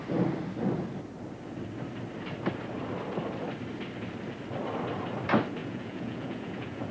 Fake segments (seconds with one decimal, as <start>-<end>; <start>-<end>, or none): 5.6-6.9